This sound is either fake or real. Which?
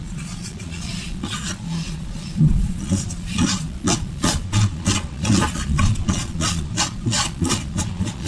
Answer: fake